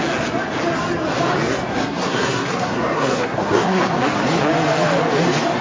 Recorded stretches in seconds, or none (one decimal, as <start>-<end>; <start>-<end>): 0.0-1.7; 3.8-5.6